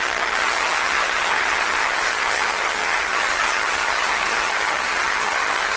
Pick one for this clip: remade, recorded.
remade